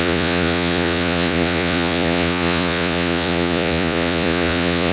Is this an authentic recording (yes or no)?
no